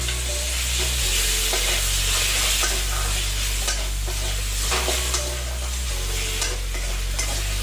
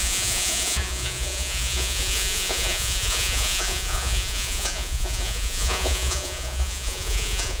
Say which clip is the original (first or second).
first